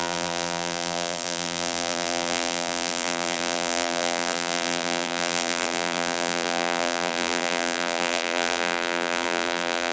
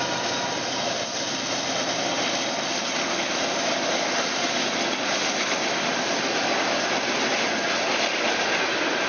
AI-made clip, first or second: first